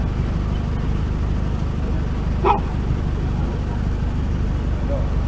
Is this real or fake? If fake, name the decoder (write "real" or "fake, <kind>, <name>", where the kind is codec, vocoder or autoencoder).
real